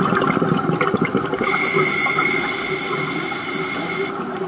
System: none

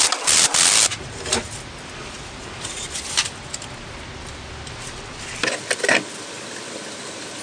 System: none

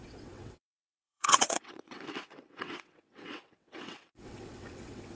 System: vocoder, WaveNeXt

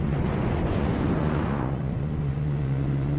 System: vocoder, Vocos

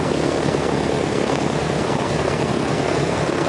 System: codec, SNAC